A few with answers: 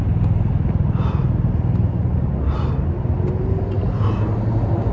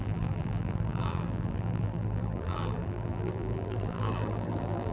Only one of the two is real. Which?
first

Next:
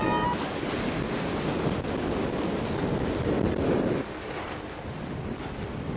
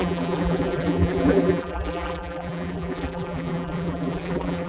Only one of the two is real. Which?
first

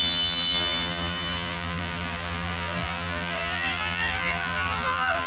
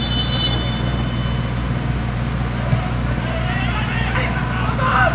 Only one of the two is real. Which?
second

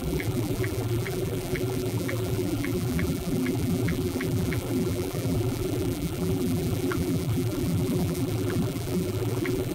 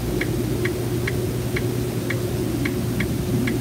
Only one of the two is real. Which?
second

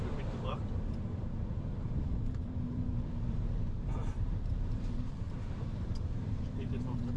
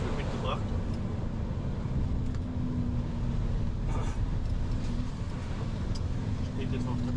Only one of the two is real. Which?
second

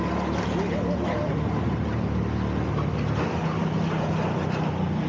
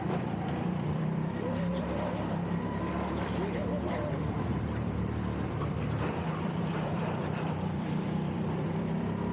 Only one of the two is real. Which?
first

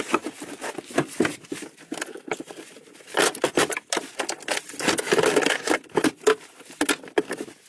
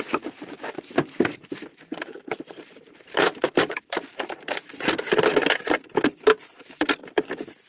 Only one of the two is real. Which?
first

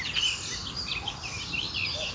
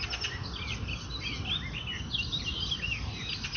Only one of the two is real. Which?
second